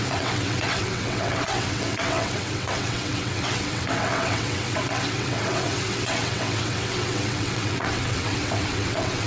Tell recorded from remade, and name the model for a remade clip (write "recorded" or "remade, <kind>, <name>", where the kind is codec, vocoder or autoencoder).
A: remade, vocoder, WaveNeXt